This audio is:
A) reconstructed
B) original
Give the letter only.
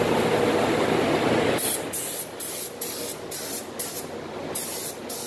B